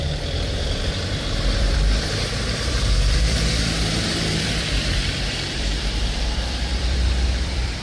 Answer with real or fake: fake